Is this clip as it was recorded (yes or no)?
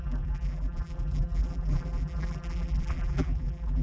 no